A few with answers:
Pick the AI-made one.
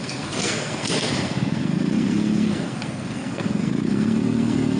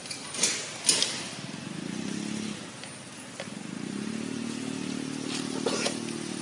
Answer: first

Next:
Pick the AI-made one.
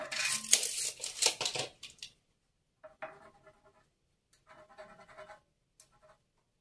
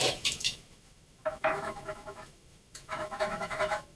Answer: second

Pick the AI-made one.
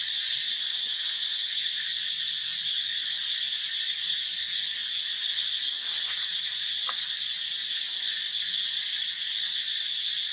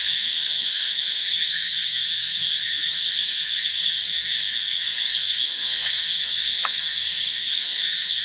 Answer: second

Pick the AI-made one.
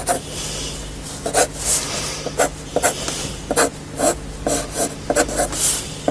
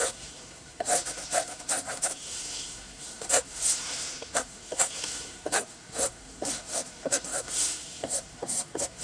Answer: second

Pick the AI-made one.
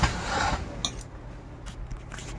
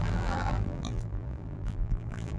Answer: second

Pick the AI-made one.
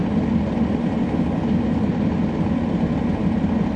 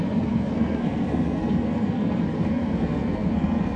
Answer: second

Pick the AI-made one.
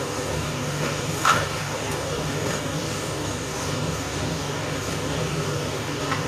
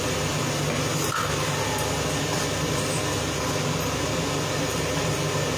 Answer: first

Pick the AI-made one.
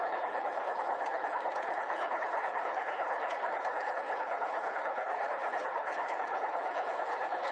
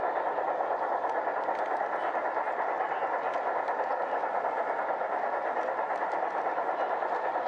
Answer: first